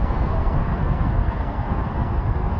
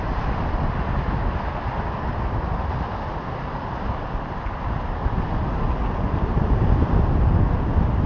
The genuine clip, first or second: second